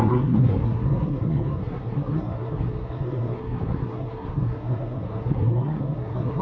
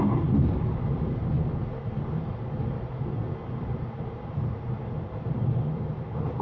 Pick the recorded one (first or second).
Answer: second